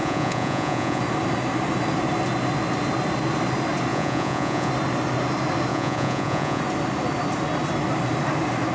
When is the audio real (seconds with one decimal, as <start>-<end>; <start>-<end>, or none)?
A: 1.0-3.9; 4.7-5.7; 6.6-8.7